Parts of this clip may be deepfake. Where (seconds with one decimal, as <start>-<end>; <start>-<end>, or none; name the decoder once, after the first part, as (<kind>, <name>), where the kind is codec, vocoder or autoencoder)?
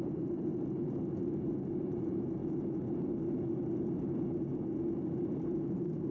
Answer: 0.0-0.5 (vocoder, BigVGAN v2); 1.7-2.4